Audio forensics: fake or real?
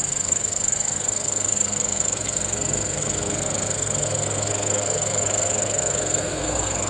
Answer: fake